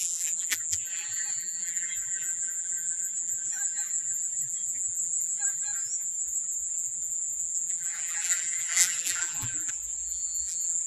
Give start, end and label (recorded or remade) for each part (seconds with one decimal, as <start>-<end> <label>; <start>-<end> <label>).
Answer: 0.0-10.9 remade